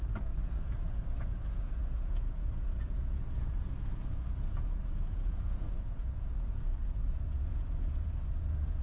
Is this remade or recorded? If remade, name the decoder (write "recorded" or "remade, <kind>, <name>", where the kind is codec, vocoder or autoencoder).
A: remade, vocoder, Vocos